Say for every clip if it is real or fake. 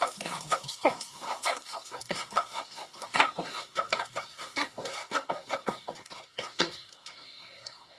fake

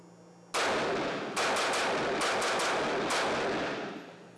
real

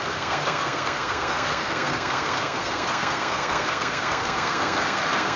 fake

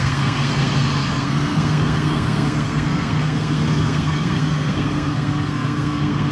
fake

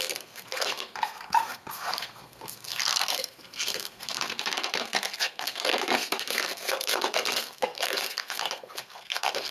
fake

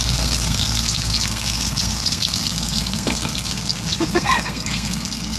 fake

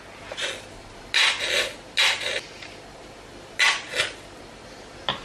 real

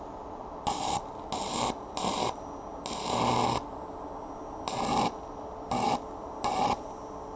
real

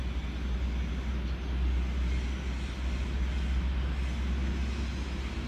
real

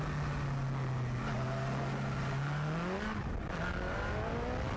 real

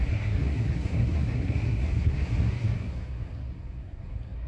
fake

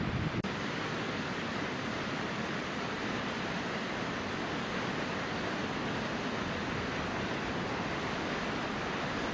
real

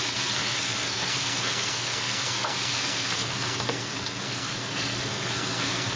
fake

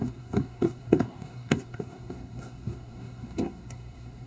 fake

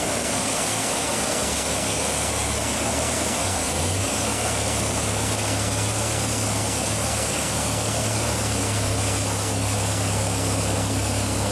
fake